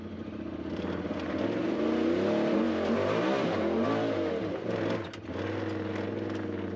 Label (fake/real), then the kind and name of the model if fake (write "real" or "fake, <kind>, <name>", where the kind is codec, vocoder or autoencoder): real